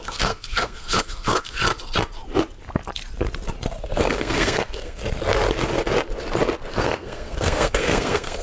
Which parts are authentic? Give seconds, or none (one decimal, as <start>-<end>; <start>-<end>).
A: 1.6-3.8; 5.0-6.7